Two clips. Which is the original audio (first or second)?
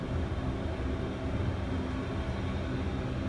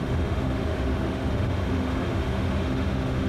first